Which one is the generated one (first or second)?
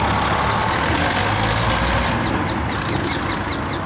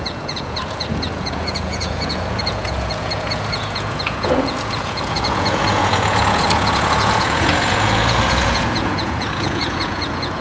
second